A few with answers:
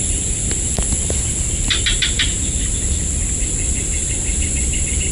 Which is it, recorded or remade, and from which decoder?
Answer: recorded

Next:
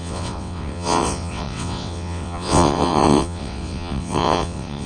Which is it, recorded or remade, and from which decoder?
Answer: remade, vocoder, WaveNeXt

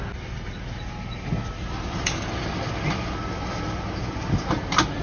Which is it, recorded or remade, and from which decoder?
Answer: recorded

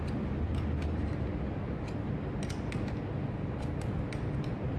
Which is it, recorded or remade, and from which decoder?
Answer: recorded